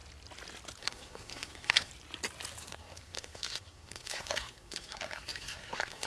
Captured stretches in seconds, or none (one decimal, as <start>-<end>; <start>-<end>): 0.0-0.8; 1.9-2.6